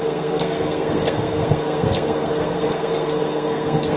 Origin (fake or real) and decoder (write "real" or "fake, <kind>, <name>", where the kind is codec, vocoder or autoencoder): fake, codec, SNAC